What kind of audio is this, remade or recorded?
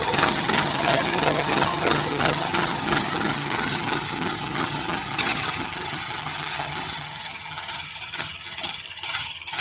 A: remade